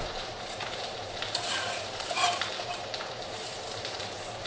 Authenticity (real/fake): fake